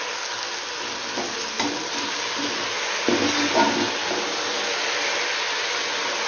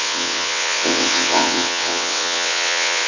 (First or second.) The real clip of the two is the first